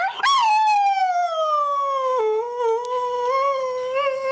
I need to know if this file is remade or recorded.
recorded